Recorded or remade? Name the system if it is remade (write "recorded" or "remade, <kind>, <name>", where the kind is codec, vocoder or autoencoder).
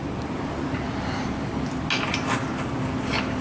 recorded